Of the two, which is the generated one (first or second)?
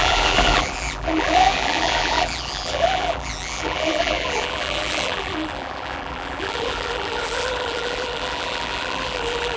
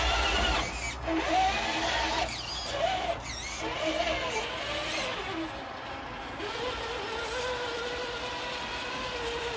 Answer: first